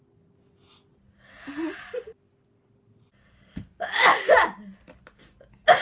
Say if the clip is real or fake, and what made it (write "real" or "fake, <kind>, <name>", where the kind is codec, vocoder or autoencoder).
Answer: real